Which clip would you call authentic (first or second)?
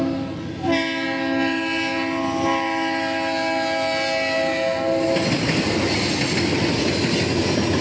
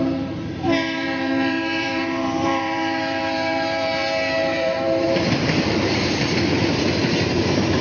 first